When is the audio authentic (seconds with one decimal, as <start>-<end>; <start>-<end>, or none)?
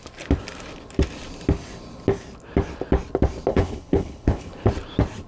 0.0-3.5; 4.7-5.3